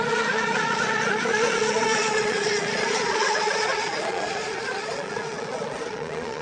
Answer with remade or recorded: remade